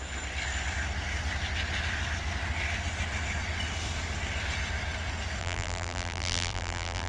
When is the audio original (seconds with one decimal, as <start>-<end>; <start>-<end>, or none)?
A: 0.0-5.4